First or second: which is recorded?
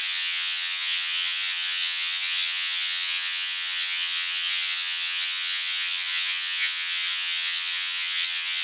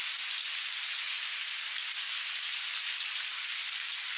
second